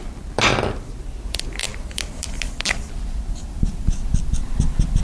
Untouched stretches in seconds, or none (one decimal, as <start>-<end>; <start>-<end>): 0.0-5.0